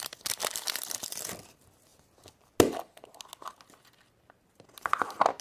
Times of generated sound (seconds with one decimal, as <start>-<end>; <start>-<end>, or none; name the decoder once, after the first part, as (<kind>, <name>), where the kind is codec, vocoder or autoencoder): none